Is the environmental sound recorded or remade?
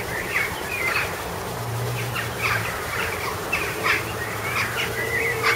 remade